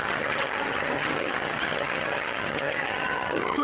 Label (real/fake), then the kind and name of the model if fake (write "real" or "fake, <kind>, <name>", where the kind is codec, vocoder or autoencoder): fake, vocoder, HiFi-GAN